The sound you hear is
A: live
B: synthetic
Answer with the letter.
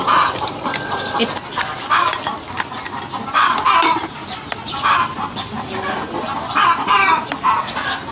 A